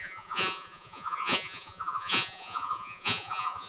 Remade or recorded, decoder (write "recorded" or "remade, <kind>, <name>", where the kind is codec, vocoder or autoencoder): remade, vocoder, Vocos